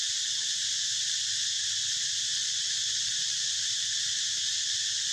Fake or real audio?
real